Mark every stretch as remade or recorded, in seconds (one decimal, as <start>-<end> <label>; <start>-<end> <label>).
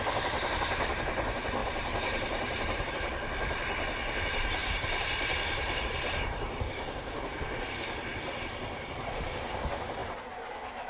0.0-1.6 recorded; 1.6-2.9 remade; 2.9-4.6 recorded; 4.6-7.2 remade; 7.2-10.9 recorded